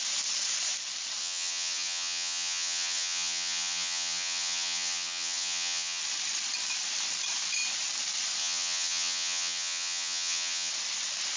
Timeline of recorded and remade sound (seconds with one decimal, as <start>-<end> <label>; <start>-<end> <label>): 0.0-1.2 recorded; 1.2-6.0 remade; 6.0-8.4 recorded; 8.4-10.7 remade; 10.7-11.4 recorded